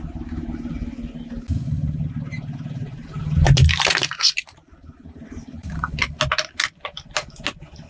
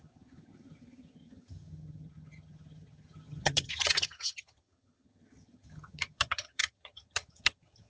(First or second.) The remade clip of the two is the second